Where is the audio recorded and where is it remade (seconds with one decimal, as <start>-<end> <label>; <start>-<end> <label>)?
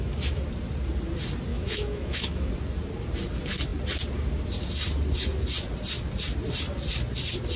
0.0-1.5 recorded; 1.5-2.5 remade; 2.5-7.6 recorded